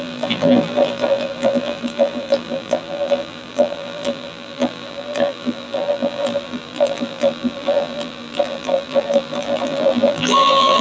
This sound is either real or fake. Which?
fake